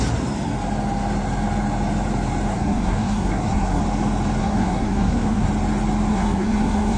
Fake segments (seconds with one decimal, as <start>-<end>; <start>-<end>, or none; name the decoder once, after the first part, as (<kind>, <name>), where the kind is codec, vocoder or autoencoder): 2.5-3.8 (codec, SNAC); 4.4-5.5; 6.1-7.0

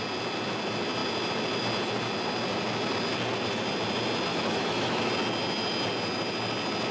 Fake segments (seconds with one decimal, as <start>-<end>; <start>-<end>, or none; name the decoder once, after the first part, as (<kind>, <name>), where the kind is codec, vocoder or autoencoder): 4.3-5.1 (autoencoder, DAC-VAE)

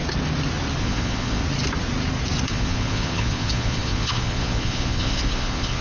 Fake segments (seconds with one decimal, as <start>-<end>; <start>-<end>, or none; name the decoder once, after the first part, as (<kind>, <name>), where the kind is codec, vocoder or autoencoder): 0.8-1.4 (vocoder, Vocos); 2.5-5.8

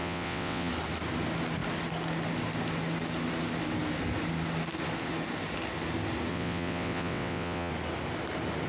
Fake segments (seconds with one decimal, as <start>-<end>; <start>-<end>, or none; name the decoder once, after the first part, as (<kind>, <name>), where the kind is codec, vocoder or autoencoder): 0.0-0.7 (vocoder, WaveNeXt); 6.3-7.7

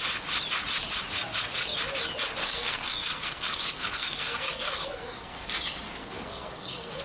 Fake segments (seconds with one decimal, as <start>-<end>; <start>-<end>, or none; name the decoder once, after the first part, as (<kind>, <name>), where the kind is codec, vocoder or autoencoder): 2.4-5.6 (codec, SNAC); 6.0-7.0

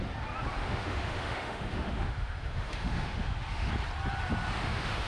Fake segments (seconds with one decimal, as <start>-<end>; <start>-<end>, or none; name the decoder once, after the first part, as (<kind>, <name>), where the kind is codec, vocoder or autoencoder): 0.6-3.7 (autoencoder, DAC-VAE); 4.6-5.1